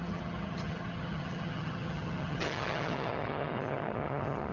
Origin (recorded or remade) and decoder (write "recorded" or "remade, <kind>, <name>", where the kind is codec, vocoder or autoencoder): remade, vocoder, HiFi-GAN